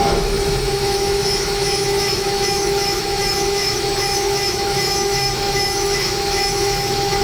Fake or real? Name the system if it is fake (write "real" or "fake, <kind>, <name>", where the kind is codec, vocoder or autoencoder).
fake, autoencoder, DAC-VAE